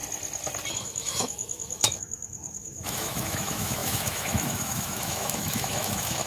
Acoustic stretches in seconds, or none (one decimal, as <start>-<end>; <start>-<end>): 0.0-0.7